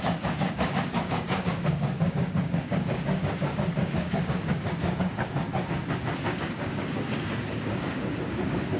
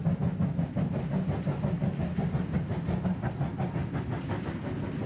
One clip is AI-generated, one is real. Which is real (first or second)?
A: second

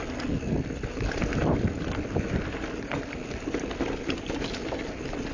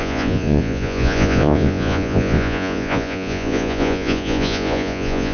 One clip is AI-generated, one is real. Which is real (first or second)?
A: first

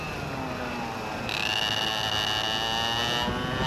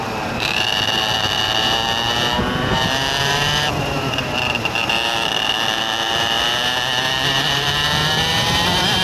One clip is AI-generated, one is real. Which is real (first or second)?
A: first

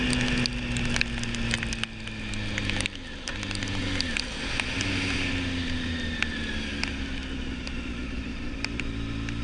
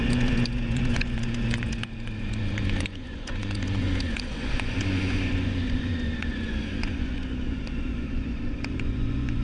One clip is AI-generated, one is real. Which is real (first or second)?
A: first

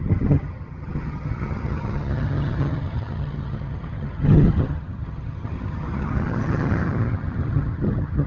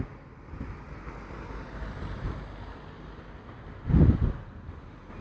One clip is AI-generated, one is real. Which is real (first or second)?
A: second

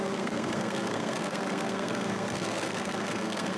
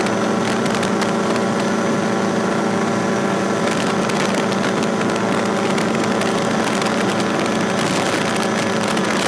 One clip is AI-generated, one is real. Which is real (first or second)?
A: second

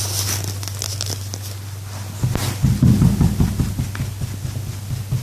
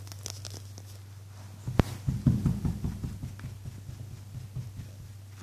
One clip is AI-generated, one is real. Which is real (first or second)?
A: second